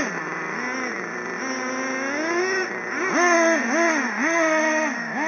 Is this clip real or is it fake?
real